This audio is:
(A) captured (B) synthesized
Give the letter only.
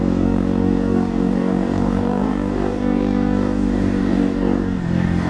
B